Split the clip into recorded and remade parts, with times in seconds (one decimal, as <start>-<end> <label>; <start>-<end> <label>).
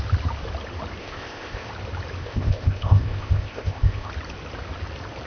0.0-1.0 recorded; 1.0-1.7 remade; 1.7-2.2 recorded; 2.2-4.1 remade; 4.1-5.3 recorded